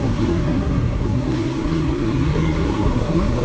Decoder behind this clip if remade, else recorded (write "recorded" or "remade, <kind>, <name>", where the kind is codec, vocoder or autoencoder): remade, codec, SNAC